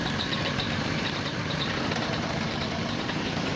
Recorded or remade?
remade